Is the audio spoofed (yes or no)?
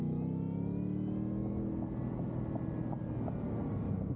no